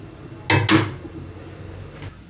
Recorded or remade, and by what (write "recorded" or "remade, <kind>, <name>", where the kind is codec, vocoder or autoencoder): recorded